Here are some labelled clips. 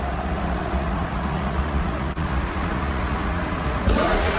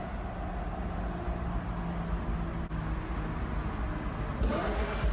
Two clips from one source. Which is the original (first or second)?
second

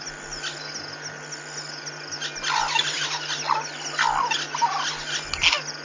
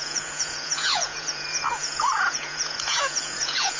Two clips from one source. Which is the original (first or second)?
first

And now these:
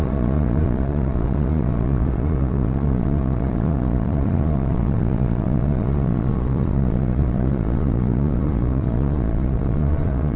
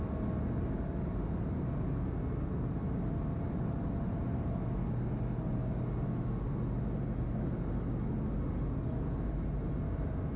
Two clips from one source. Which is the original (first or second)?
second